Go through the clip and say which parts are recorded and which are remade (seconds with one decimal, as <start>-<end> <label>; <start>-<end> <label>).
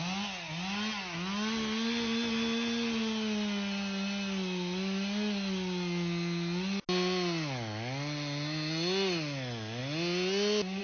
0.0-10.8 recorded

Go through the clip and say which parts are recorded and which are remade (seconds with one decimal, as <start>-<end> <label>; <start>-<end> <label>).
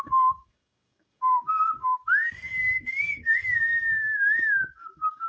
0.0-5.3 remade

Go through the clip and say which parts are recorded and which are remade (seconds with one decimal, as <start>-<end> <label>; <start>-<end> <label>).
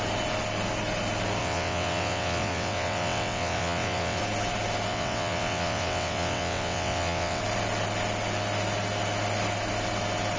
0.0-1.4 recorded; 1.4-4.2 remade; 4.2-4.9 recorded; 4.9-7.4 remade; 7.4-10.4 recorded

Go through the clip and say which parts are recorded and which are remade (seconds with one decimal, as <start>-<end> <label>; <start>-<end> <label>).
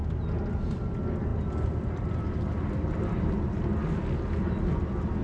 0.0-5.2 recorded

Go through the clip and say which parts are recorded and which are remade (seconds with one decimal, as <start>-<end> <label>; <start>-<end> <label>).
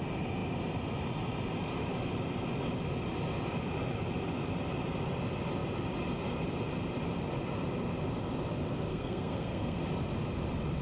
0.0-8.9 recorded; 8.9-9.8 remade; 9.8-10.8 recorded